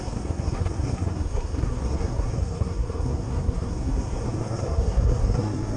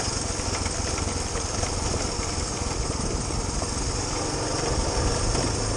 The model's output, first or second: first